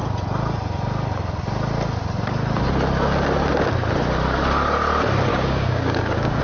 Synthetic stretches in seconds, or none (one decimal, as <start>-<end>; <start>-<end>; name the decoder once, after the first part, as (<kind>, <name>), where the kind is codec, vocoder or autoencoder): 5.3-6.4 (codec, DAC)